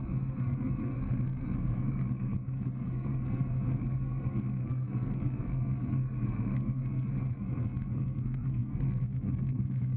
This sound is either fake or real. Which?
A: fake